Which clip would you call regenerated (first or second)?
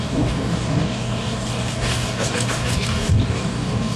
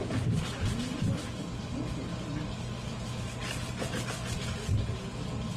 first